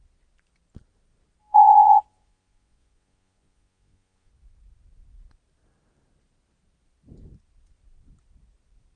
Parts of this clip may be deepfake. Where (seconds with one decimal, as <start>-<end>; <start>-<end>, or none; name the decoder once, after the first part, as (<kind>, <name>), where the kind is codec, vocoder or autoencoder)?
1.4-4.3 (vocoder, Vocos)